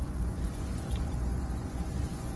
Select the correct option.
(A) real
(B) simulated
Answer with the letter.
B